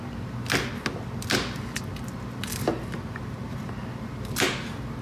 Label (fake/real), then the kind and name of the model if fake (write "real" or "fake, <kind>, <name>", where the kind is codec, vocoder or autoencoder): real